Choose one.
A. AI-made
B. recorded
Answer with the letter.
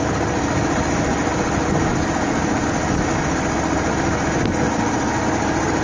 B